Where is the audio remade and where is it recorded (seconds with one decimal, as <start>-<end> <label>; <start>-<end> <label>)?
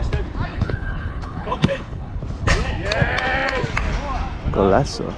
0.0-0.5 recorded; 0.5-2.2 remade; 2.2-5.2 recorded